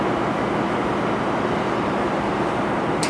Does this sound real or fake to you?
real